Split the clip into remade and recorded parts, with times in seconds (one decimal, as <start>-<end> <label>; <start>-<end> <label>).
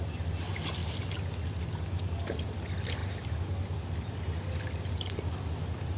0.0-0.8 remade; 0.8-1.6 recorded; 1.6-6.0 remade